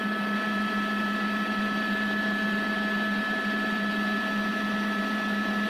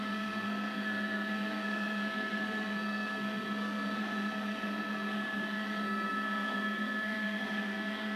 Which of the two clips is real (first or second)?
first